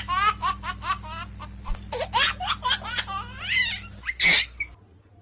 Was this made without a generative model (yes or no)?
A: yes